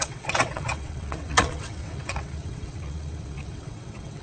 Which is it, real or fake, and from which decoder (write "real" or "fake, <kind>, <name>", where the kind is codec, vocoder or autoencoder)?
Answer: fake, vocoder, WaveNeXt